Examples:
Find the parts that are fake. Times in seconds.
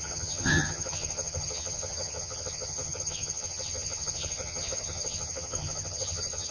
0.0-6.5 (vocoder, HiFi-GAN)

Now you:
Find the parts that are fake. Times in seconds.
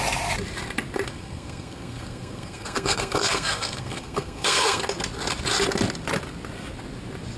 1.1-4.8 (codec, SNAC)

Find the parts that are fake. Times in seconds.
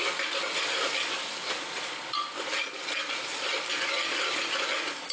none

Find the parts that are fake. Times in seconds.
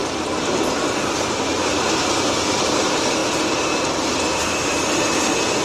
1.5-5.6 (vocoder, BigVGAN v2)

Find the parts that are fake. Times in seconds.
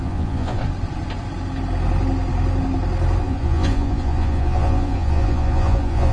0.0-0.6 (vocoder, Vocos); 3.2-6.1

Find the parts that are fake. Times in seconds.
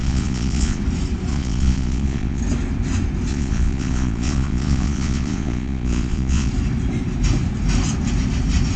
0.0-0.8 (vocoder, Vocos); 1.3-2.4; 3.3-6.5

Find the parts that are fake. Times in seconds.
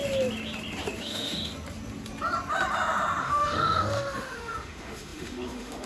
1.0-1.5 (autoencoder, DAC-VAE); 3.2-5.9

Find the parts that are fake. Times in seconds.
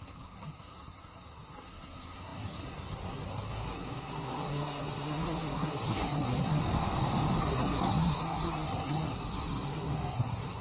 0.0-6.6 (codec, SNAC); 7.4-10.6